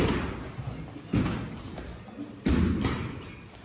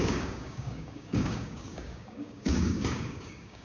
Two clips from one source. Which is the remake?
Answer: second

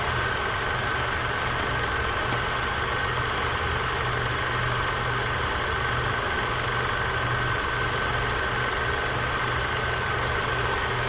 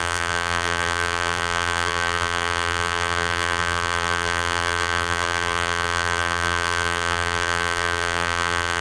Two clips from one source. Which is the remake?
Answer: second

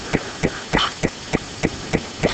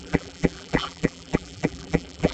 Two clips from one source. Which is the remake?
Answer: second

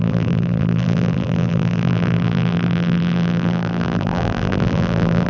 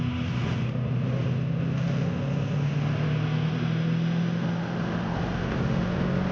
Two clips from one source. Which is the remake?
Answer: first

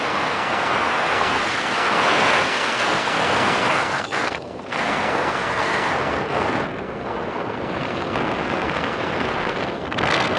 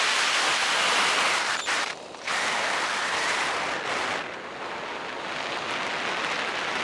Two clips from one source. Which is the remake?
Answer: first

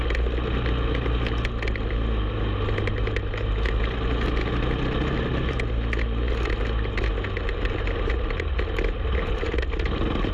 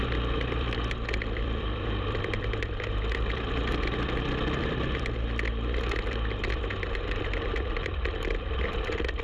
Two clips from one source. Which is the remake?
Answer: second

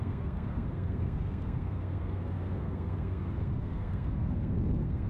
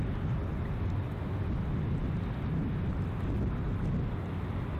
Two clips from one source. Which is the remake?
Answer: first